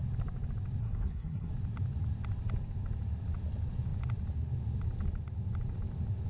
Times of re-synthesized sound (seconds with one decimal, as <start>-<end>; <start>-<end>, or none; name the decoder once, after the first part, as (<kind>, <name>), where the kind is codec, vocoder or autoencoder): 0.8-1.5 (codec, SNAC)